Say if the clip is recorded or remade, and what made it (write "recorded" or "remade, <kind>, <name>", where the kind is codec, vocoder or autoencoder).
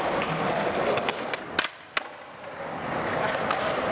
recorded